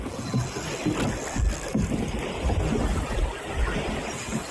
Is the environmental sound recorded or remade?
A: recorded